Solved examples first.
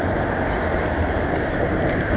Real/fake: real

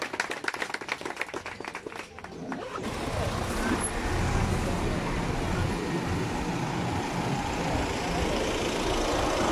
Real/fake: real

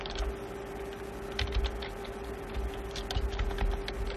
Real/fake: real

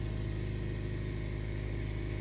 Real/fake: real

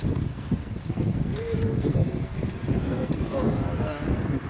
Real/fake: fake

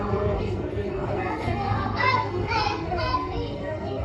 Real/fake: fake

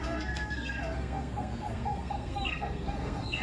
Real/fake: fake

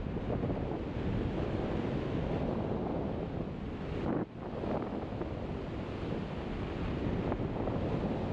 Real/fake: real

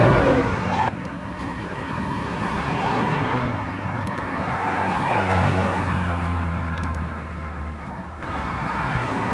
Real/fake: fake